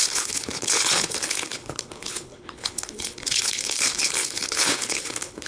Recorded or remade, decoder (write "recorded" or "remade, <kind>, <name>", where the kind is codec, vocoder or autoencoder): remade, codec, HILCodec